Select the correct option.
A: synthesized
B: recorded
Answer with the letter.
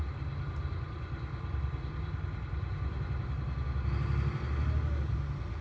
B